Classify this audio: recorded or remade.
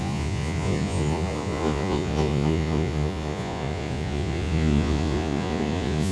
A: remade